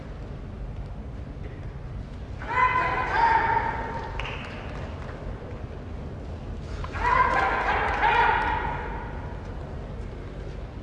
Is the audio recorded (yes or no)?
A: yes